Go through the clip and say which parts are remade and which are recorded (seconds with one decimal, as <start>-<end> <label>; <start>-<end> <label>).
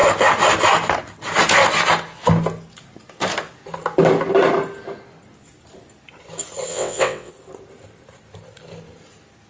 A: 0.0-6.7 recorded; 6.7-7.3 remade; 7.3-9.5 recorded